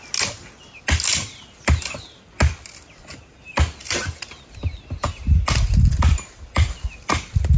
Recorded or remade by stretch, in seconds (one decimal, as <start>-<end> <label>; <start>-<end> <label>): 0.0-7.6 recorded